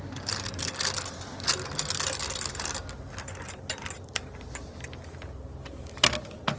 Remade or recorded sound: recorded